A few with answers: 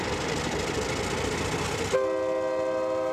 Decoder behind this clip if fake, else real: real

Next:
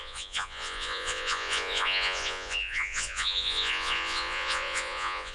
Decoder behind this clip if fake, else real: fake, vocoder, Vocos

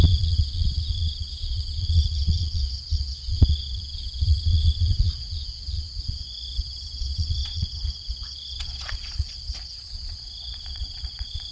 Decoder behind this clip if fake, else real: fake, vocoder, Vocos